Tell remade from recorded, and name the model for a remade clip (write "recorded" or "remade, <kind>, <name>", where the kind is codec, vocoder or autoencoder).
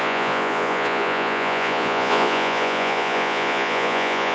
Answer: remade, vocoder, Vocos